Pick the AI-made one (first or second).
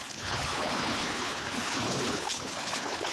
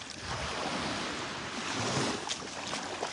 first